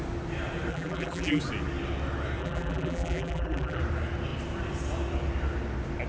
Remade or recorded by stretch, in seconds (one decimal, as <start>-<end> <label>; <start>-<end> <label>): 0.0-0.7 recorded; 0.7-1.4 remade; 1.4-2.4 recorded; 2.4-3.8 remade; 3.8-6.1 recorded